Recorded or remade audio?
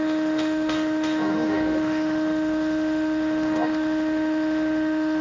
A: remade